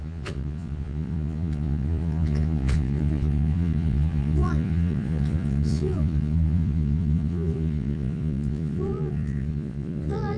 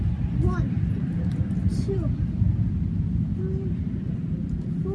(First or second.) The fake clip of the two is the first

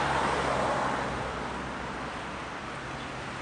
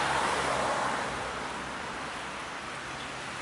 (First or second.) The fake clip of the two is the second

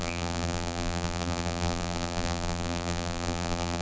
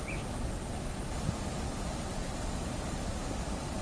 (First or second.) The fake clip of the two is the first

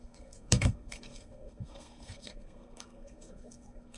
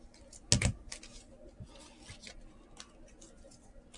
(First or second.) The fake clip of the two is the first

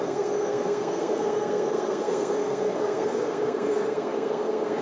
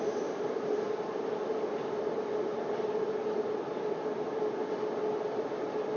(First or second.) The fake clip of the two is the first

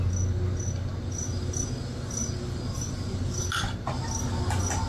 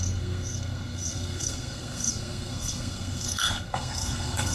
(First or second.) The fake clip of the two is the second